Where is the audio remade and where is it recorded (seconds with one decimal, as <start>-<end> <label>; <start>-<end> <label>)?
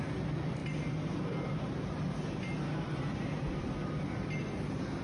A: 0.0-5.0 recorded